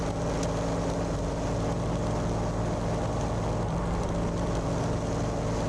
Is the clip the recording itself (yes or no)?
yes